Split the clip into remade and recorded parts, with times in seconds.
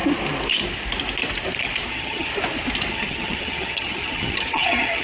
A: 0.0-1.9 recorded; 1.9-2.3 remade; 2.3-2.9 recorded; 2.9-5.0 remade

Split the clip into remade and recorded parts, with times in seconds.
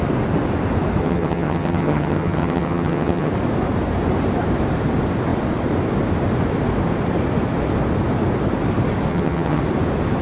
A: 0.0-1.0 recorded; 1.0-3.3 remade; 3.3-9.1 recorded; 9.1-9.6 remade; 9.6-10.2 recorded